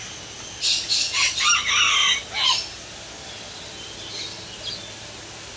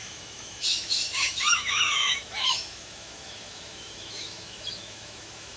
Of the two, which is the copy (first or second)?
second